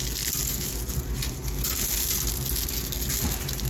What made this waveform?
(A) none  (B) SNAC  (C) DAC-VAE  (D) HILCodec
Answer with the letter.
A